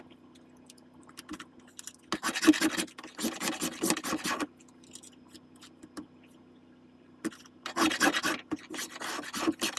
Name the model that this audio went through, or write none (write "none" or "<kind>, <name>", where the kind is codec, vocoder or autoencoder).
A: none